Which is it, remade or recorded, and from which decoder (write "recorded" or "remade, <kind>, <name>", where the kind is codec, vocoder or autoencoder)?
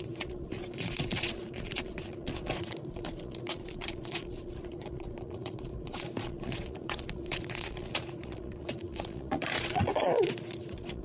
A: remade, vocoder, Vocos